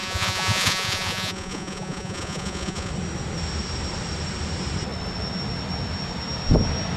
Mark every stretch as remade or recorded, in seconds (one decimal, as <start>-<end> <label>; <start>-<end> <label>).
0.0-2.9 remade; 2.9-7.0 recorded